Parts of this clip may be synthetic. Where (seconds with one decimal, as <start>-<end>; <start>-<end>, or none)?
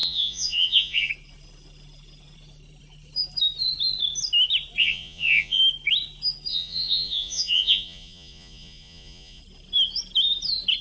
0.0-1.1; 4.8-5.6; 6.5-9.4